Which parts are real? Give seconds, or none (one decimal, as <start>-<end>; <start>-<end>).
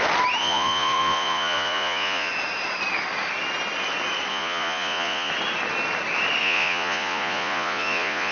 0.0-0.4; 2.3-4.3; 5.3-6.4